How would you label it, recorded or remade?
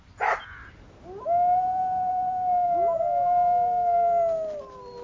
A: recorded